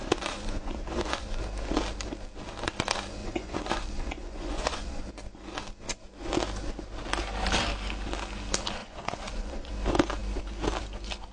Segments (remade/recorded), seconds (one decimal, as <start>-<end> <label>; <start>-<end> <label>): 0.0-1.4 remade; 1.4-3.2 recorded; 3.2-5.1 remade; 5.1-8.8 recorded; 8.8-9.7 remade; 9.7-11.3 recorded